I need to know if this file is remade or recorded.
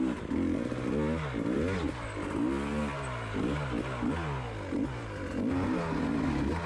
recorded